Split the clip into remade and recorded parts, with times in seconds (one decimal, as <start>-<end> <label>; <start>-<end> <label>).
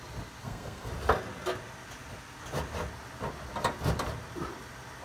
0.0-0.4 recorded; 0.4-0.9 remade; 0.9-5.0 recorded